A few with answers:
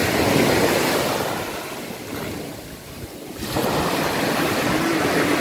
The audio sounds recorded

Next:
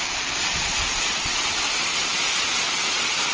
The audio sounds remade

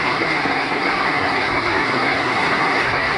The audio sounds remade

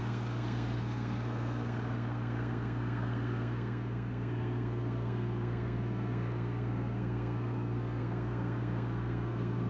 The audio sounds remade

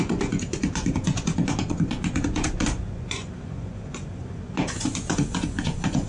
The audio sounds remade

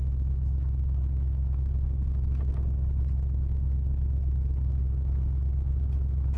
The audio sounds recorded